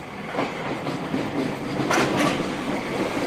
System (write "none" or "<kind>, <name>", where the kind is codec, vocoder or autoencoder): none